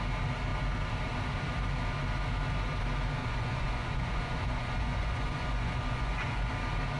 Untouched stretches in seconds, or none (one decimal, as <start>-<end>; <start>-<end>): 0.0-3.2; 6.5-7.0